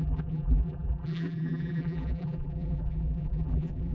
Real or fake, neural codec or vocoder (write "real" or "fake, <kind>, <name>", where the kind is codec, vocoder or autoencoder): fake, vocoder, BigVGAN v2